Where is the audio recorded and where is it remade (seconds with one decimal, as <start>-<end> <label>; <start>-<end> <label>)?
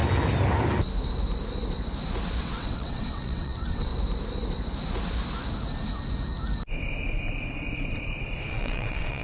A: 0.0-2.4 recorded; 2.4-3.9 remade; 3.9-8.5 recorded; 8.5-9.2 remade